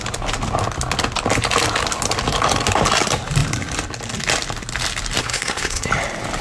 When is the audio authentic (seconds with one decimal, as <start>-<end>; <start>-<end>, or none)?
0.0-5.2; 5.9-6.4